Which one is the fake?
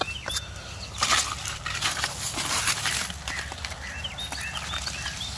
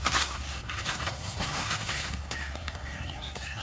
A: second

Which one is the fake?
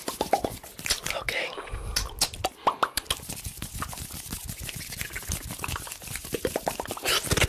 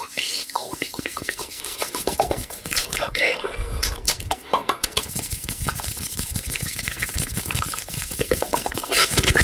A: second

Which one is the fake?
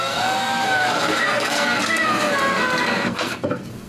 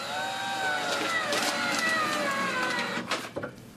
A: first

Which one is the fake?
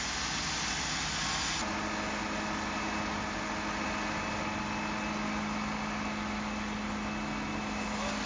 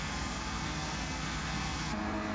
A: second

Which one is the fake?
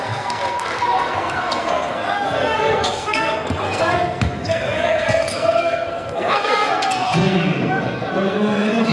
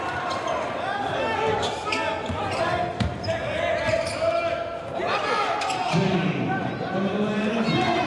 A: first